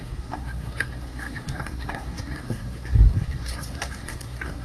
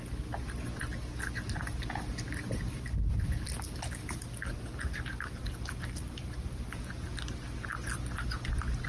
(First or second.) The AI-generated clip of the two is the first